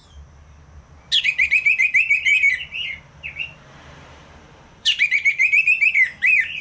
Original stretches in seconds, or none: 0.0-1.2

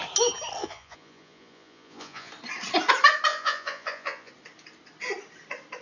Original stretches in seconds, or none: 0.0-0.6; 2.3-3.3; 4.3-5.8

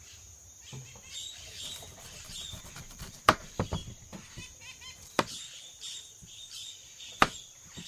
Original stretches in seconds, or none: 3.8-4.3

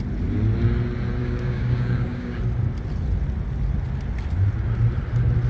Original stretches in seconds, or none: 0.0-1.2; 2.4-5.5